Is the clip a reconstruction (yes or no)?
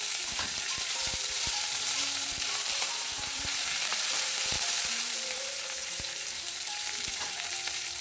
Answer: yes